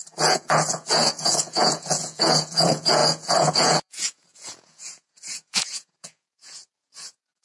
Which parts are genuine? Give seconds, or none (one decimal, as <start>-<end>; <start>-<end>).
none